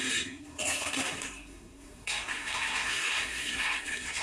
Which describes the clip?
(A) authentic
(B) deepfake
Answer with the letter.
B